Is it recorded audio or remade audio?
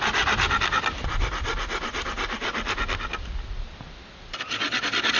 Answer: recorded